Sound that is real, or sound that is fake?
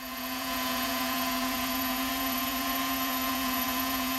fake